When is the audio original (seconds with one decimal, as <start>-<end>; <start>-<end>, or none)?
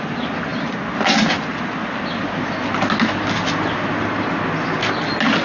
0.0-5.4